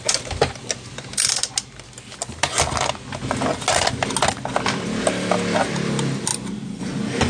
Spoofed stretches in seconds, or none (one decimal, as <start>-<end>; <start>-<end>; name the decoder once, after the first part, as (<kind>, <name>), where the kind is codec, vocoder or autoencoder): none